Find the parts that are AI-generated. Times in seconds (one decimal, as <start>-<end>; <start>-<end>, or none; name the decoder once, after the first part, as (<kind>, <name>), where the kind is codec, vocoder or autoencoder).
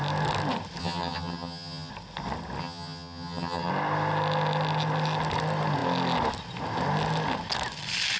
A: 0.8-1.9 (vocoder, HiFi-GAN); 2.6-3.7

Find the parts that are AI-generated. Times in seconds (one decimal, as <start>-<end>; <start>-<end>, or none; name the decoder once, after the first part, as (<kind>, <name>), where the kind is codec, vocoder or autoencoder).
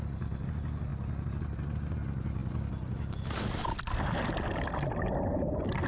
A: none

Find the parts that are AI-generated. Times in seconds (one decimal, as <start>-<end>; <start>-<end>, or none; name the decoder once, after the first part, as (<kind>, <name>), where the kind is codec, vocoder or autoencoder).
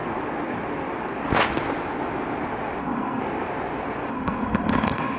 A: 2.8-3.2 (codec, SNAC); 4.1-5.2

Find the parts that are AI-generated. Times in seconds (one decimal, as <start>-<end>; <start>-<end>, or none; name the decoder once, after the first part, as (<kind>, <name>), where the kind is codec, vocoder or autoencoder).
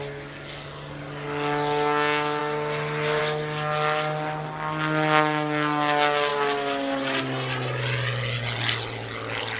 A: none